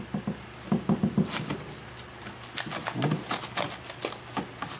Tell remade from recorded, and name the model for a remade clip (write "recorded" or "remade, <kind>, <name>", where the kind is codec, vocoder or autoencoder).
recorded